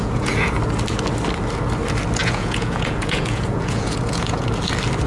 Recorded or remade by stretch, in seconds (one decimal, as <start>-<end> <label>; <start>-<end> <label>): 0.0-0.6 remade; 0.6-2.2 recorded; 2.2-4.5 remade; 4.5-5.1 recorded